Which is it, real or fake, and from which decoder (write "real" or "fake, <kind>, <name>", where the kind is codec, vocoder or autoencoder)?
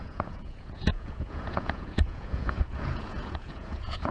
fake, vocoder, Vocos